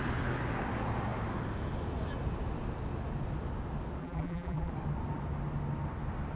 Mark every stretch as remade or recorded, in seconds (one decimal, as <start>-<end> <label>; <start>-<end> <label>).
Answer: 0.0-4.0 recorded; 4.0-4.7 remade; 4.7-6.4 recorded